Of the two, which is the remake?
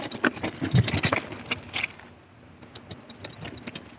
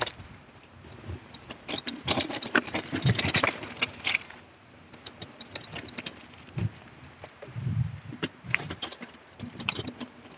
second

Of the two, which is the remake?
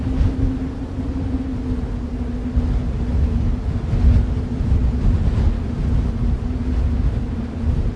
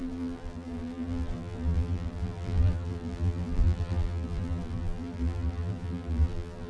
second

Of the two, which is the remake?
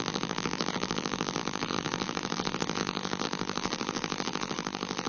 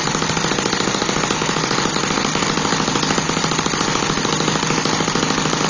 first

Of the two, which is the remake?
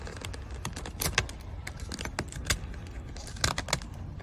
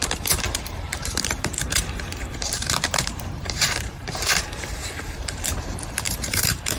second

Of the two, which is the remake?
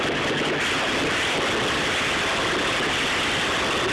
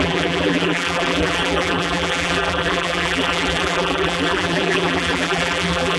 second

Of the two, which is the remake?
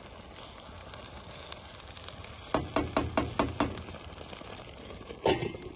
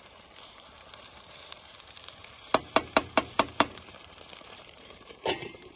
second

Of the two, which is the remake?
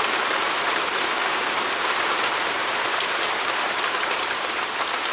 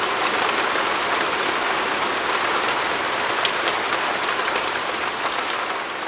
first